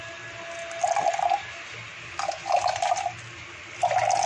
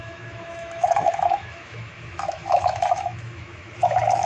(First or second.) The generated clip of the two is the second